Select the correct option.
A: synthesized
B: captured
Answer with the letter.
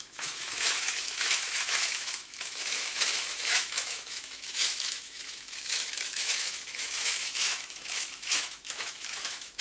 A